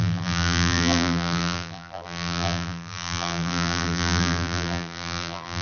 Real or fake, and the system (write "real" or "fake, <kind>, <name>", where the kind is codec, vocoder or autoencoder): fake, vocoder, BigVGAN v2